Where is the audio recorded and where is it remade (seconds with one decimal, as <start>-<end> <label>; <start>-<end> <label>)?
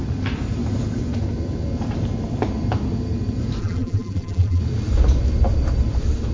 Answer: 0.0-3.6 recorded; 3.6-4.6 remade; 4.6-6.3 recorded